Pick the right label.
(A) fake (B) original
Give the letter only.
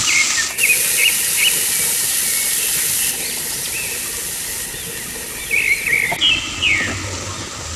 B